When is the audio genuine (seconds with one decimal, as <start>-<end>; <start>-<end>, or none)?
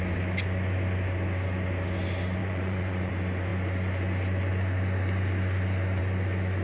0.0-2.4; 3.1-6.6